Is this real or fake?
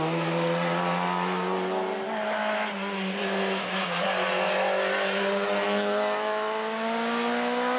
real